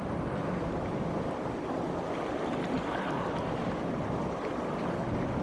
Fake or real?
real